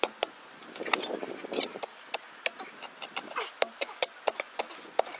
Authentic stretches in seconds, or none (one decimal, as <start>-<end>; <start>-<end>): 0.6-3.7